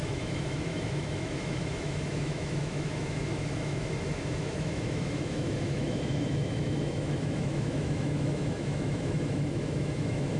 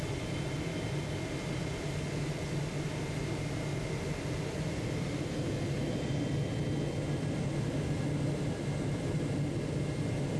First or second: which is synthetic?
first